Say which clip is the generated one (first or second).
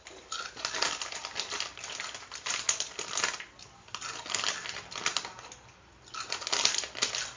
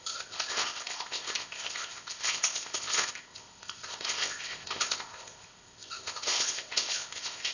second